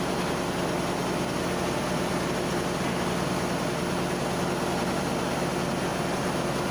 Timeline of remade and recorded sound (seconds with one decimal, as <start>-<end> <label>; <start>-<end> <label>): 0.0-6.7 recorded